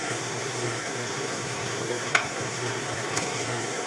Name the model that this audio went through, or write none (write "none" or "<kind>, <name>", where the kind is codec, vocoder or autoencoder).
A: codec, SNAC